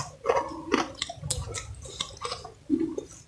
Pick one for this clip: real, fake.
real